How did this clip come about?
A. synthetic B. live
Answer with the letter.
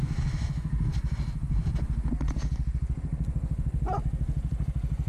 B